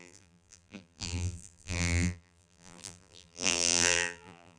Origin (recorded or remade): remade